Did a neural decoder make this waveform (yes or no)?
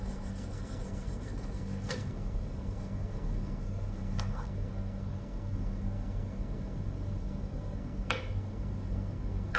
yes